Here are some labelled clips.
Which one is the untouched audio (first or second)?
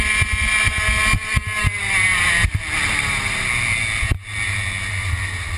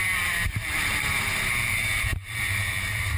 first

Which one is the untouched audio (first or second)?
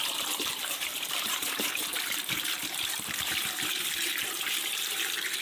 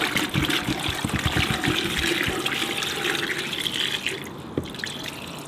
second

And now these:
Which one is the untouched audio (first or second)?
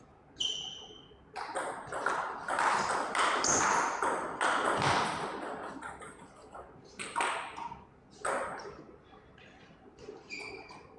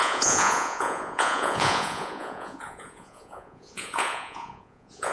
first